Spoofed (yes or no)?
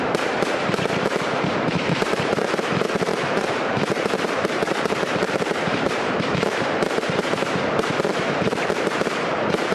yes